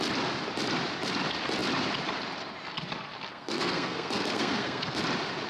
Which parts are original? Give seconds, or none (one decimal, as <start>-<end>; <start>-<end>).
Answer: 0.0-3.3; 5.0-5.5